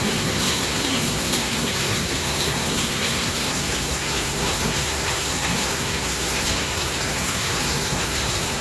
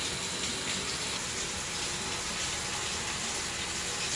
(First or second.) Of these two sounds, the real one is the second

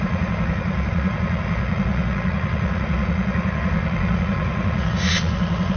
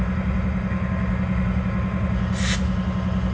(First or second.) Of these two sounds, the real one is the second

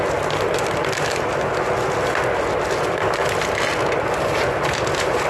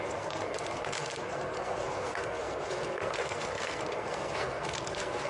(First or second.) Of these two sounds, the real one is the first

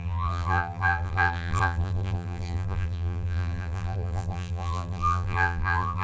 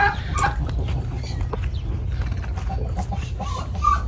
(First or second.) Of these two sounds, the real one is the second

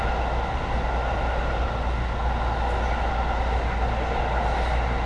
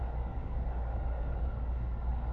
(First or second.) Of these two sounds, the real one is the first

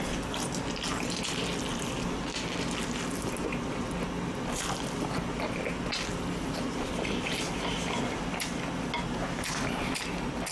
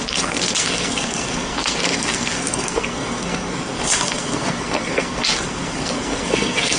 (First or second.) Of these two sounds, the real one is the first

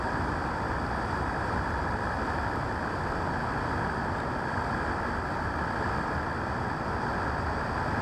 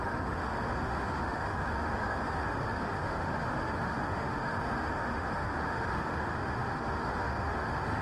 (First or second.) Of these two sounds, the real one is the first